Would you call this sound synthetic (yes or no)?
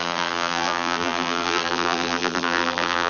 yes